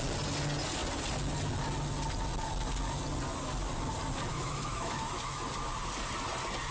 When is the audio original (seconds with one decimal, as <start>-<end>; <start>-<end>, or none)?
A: 0.0-4.3; 5.4-6.7

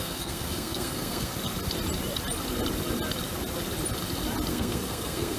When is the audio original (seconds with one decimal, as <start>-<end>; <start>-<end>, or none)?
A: 1.3-4.5

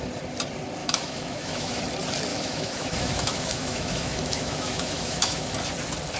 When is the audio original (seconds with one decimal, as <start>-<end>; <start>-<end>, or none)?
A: 0.0-0.8; 1.8-2.3; 5.5-6.2